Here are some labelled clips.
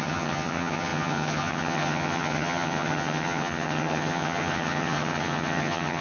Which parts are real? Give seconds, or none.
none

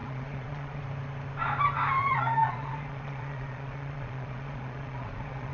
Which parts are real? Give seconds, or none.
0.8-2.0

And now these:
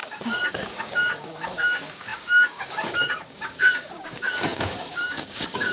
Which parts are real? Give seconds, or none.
none

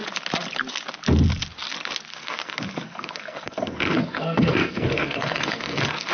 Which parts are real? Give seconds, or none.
0.0-2.1

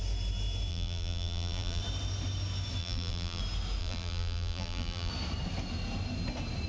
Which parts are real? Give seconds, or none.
0.0-0.7; 1.8-2.8; 3.4-3.8; 5.1-6.7

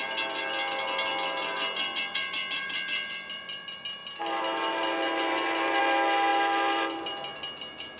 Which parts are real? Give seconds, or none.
0.0-8.0

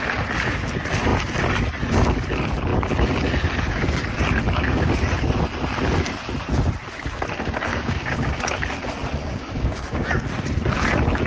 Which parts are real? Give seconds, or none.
0.0-7.7; 8.4-9.2; 10.1-11.3

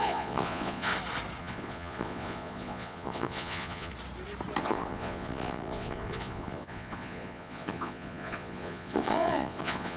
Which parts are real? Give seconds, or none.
0.9-1.4; 3.9-4.6